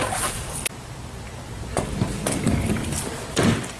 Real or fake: real